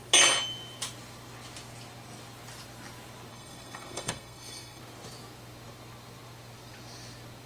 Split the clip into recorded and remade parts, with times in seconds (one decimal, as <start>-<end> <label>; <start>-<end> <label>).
0.0-3.3 recorded; 3.3-4.8 remade; 4.8-7.5 recorded